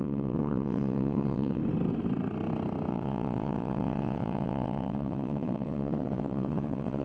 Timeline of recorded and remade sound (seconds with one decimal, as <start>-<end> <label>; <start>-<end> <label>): 0.0-1.6 remade; 1.6-2.9 recorded; 2.9-7.0 remade